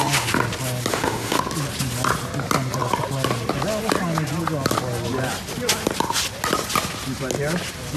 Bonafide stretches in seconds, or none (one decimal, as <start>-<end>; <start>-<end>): 0.0-0.9; 1.4-8.0